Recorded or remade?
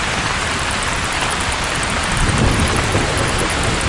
remade